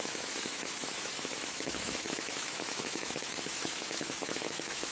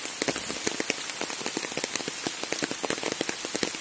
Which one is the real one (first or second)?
second